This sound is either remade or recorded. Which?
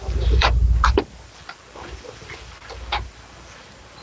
remade